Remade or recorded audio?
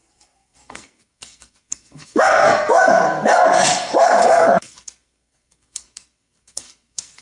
remade